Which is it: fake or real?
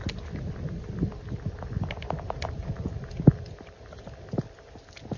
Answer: real